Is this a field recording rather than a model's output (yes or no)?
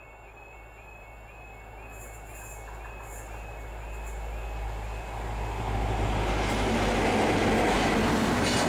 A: yes